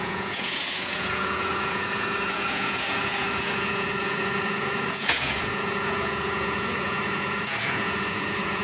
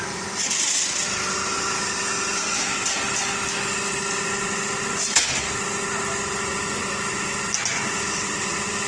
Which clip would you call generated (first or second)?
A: first